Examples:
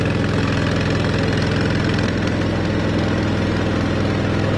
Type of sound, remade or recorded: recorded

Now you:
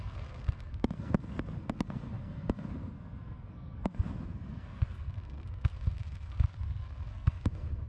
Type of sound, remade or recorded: remade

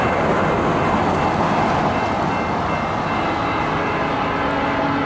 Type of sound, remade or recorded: recorded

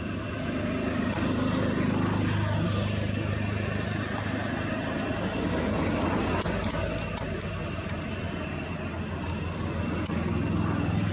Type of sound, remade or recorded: recorded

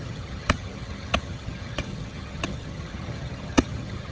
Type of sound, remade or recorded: remade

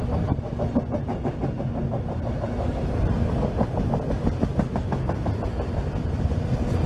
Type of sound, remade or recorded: recorded